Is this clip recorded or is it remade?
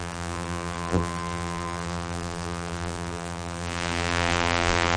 remade